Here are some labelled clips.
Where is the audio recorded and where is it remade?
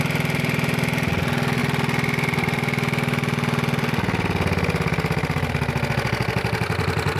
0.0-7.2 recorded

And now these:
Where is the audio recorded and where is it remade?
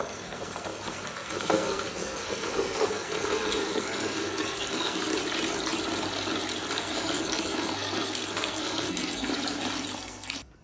0.0-5.1 remade; 5.1-6.8 recorded; 6.8-9.3 remade; 9.3-9.9 recorded; 9.9-10.6 remade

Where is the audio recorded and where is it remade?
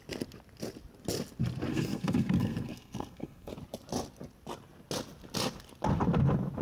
0.0-1.7 recorded; 1.7-3.5 remade; 3.5-6.6 recorded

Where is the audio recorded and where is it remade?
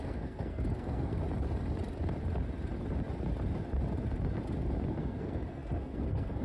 0.0-1.2 remade; 1.2-5.0 recorded; 5.0-6.4 remade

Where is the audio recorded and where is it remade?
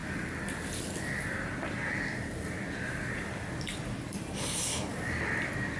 0.0-5.8 recorded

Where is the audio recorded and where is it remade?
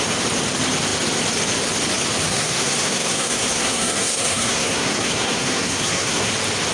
0.0-2.3 recorded; 2.3-6.3 remade; 6.3-6.7 recorded